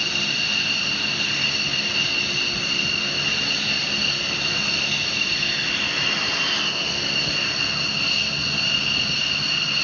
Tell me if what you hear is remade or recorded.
recorded